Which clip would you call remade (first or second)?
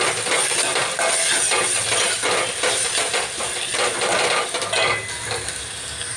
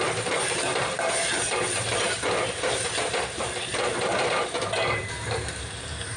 second